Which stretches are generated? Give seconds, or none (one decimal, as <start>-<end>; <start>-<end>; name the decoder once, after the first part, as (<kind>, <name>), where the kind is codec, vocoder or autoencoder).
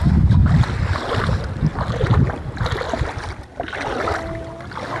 none